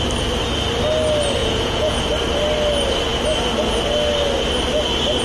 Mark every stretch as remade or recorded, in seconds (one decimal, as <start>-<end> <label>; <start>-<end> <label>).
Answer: 0.0-1.4 recorded; 1.4-2.0 remade; 2.0-5.2 recorded